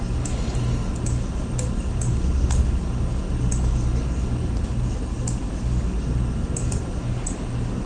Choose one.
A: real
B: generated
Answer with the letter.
A